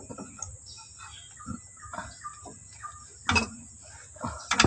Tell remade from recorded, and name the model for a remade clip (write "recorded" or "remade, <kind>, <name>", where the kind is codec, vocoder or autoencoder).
recorded